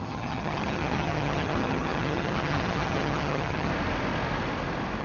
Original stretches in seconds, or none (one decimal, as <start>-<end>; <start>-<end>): 3.7-5.0

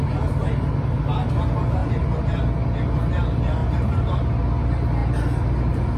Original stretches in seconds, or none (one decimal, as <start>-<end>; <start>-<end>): 0.0-1.8; 2.4-3.6; 4.3-6.0

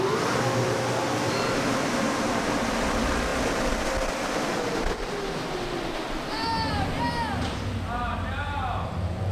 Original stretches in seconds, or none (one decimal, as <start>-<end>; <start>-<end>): 0.0-9.3